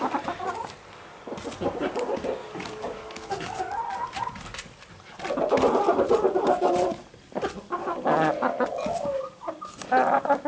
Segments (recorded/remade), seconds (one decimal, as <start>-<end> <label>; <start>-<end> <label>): 0.0-2.4 recorded; 2.4-3.8 remade; 3.8-8.5 recorded; 8.5-9.5 remade; 9.5-10.5 recorded